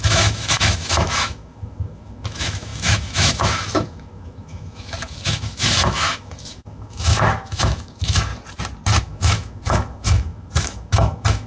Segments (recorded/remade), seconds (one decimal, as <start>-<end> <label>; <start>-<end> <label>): 0.0-8.3 remade; 8.3-9.0 recorded; 9.0-11.5 remade